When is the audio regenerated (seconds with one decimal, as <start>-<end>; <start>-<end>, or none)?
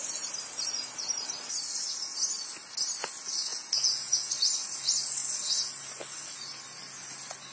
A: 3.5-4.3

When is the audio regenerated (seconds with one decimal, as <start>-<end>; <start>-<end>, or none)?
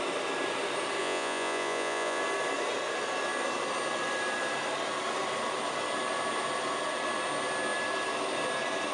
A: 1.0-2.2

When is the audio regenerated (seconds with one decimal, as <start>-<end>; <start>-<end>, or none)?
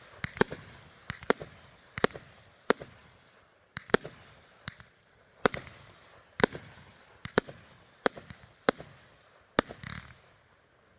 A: 3.0-4.7; 6.9-7.5